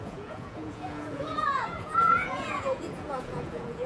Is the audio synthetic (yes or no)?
yes